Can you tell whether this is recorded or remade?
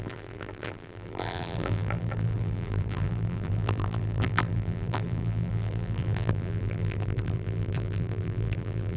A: remade